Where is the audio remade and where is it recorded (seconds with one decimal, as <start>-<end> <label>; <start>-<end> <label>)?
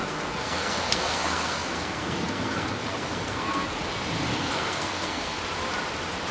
0.0-3.8 remade; 3.8-4.3 recorded; 4.3-5.4 remade; 5.4-6.3 recorded